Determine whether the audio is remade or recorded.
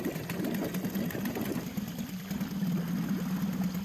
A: recorded